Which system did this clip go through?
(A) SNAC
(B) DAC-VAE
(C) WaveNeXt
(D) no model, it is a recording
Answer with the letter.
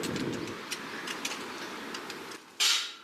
D